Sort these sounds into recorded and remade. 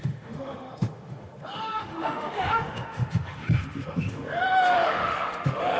remade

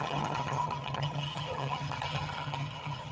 remade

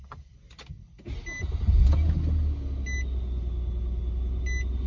recorded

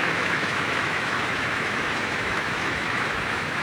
remade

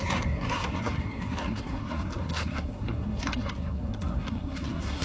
remade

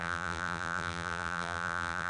remade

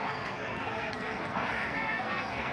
remade